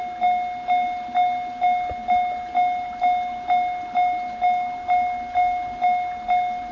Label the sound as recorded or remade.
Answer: recorded